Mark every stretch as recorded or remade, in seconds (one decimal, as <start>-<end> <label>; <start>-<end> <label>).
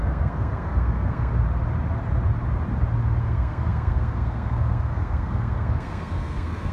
0.0-1.3 remade; 1.3-3.2 recorded; 3.2-6.7 remade